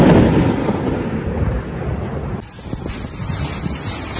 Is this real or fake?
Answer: real